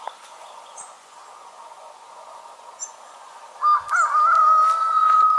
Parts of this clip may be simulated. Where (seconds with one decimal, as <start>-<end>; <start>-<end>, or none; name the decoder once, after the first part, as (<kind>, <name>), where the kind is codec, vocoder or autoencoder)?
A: 0.0-3.4 (vocoder, Vocos); 4.9-5.4

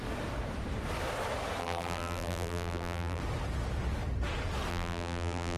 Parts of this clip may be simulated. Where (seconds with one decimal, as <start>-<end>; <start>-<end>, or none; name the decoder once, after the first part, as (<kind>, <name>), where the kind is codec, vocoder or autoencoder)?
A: 1.6-3.2 (vocoder, BigVGAN v2); 4.7-5.6